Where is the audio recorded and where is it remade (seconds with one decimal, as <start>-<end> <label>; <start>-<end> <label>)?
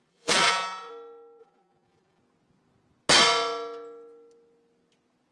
0.0-0.9 remade; 0.9-1.4 recorded; 1.4-2.2 remade; 2.2-5.3 recorded